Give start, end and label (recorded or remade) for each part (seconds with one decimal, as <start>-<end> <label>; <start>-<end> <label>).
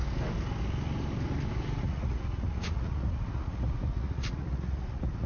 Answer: 0.0-1.8 recorded; 1.8-5.3 remade